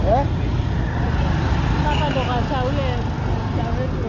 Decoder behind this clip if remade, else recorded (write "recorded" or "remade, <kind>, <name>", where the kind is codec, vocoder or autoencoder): recorded